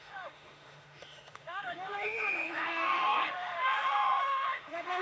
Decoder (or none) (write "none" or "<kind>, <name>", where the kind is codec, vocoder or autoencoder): autoencoder, DAC-VAE